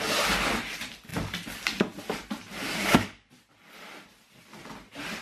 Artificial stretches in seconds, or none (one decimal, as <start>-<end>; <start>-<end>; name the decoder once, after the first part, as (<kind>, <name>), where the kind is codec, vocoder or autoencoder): 2.6-3.3 (codec, DAC)